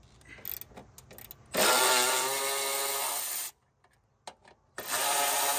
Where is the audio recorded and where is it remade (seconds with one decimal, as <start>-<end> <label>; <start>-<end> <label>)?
0.0-5.6 recorded